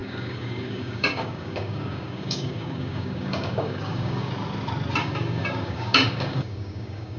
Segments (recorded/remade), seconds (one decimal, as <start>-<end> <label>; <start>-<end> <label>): 0.0-4.3 remade; 4.3-5.0 recorded; 5.0-7.2 remade